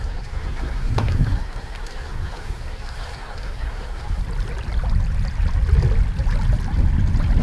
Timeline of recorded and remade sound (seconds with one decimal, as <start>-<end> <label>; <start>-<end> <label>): 0.0-4.2 remade; 4.2-7.4 recorded

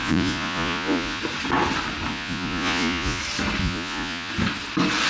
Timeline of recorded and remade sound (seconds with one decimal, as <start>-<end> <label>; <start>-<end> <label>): 0.0-1.2 remade; 1.2-2.1 recorded; 2.1-3.2 remade; 3.2-3.6 recorded; 3.6-4.3 remade; 4.3-5.1 recorded